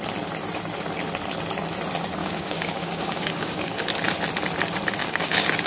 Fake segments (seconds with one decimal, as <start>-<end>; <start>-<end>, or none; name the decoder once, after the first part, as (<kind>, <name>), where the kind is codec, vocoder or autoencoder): 2.2-3.8 (codec, DAC); 5.0-5.7